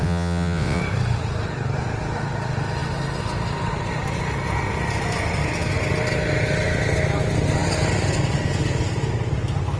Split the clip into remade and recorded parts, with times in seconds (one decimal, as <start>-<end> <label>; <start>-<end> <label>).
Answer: 0.0-0.8 remade; 0.8-9.8 recorded